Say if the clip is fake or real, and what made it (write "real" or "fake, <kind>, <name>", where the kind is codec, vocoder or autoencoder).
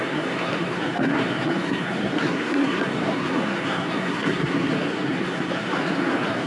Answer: fake, codec, SNAC